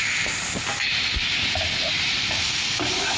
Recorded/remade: recorded